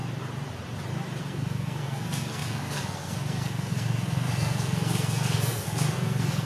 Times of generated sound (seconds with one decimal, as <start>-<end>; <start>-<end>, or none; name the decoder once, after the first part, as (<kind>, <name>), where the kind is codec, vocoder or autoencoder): 1.2-6.5 (codec, SNAC)